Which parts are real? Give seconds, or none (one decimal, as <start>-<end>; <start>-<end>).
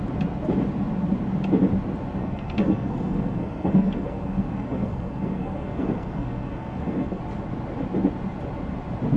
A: 0.0-2.2; 7.2-9.2